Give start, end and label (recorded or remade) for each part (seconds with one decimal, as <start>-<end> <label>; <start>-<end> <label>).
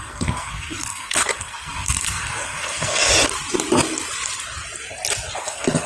0.0-3.1 remade; 3.1-5.4 recorded; 5.4-5.9 remade